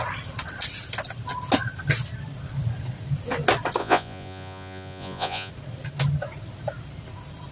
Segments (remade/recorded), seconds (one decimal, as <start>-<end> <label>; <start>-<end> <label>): 0.0-3.8 recorded; 3.8-5.5 remade; 5.5-7.5 recorded